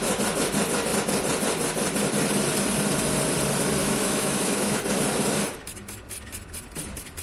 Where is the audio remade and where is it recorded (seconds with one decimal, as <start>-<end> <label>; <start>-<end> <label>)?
0.0-3.8 recorded; 3.8-4.8 remade; 4.8-7.2 recorded